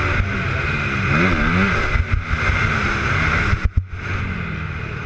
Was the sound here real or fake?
real